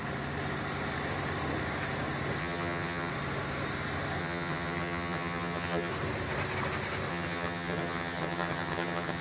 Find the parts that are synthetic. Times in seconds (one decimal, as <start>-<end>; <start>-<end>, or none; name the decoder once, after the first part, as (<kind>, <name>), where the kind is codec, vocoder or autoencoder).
2.4-3.1 (vocoder, HiFi-GAN); 4.2-5.9; 7.1-9.2